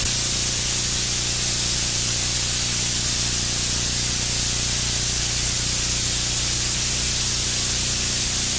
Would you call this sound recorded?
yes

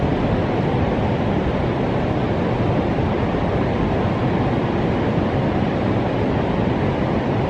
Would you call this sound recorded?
yes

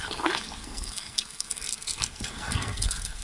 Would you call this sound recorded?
no